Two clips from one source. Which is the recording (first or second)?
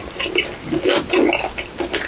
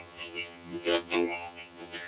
first